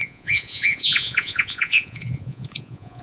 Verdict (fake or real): fake